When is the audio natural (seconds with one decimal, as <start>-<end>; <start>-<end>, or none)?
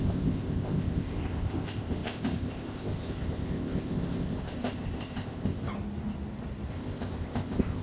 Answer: 5.6-6.7